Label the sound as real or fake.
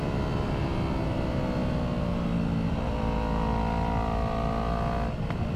real